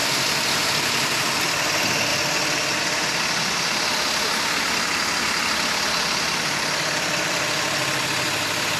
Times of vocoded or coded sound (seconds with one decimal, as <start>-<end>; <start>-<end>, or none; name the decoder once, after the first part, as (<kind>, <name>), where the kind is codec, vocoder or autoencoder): none